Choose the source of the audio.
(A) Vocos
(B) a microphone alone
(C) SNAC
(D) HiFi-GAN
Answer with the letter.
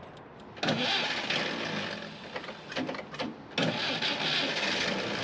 B